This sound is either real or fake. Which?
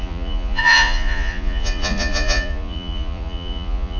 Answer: fake